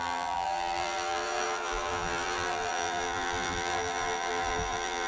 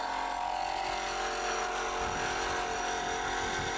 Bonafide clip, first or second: second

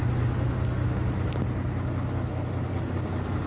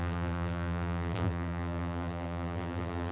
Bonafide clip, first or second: first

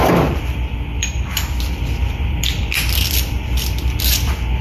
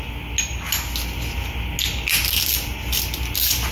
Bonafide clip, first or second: second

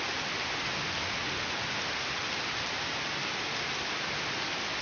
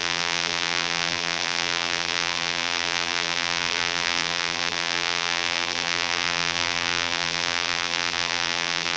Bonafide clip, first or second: first